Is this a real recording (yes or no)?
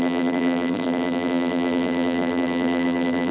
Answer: no